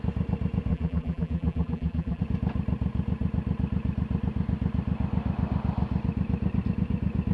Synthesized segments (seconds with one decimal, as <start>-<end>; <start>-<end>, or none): 0.7-2.2